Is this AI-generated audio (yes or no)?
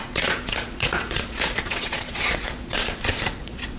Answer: yes